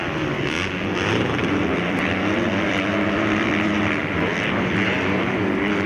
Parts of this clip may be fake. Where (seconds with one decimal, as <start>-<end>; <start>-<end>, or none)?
1.1-5.9